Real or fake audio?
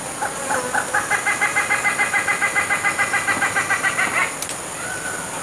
real